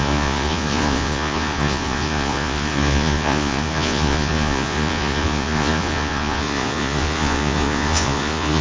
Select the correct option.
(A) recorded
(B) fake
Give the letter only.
B